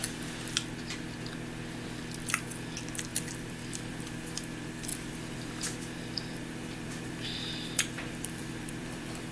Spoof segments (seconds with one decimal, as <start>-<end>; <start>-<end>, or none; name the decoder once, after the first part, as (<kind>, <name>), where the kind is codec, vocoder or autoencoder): 3.1-4.0 (vocoder, BigVGAN v2); 4.9-9.3

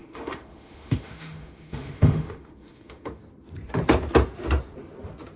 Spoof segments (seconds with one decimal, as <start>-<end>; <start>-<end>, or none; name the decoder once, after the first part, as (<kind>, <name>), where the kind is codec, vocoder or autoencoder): 0.0-3.2 (autoencoder, DAC-VAE)

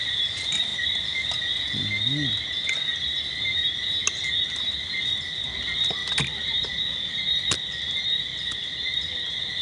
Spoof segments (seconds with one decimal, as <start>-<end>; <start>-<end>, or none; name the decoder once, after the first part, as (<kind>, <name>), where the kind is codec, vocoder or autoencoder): 0.0-0.7 (vocoder, BigVGAN v2); 4.4-6.0; 6.6-9.6

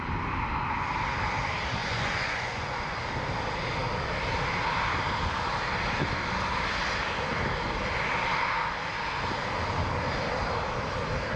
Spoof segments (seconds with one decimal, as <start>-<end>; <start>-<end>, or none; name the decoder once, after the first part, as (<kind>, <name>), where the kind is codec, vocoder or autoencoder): 1.8-3.0 (vocoder, Vocos)

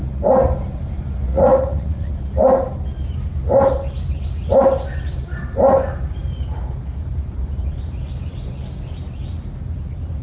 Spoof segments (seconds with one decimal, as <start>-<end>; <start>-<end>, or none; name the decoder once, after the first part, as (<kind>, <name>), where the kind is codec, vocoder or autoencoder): 1.3-2.1 (vocoder, Vocos)

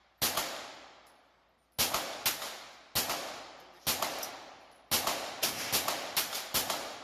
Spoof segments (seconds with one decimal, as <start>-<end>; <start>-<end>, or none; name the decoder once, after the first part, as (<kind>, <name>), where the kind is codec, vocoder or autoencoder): none

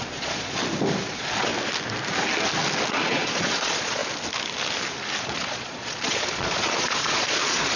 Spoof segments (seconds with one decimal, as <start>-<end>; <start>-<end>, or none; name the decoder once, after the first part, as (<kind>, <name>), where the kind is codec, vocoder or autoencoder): 0.0-0.6 (vocoder, Vocos); 1.1-1.5; 2.9-4.0; 5.2-7.8